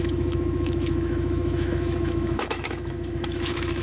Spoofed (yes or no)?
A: yes